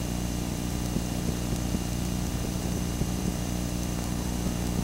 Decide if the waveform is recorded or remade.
remade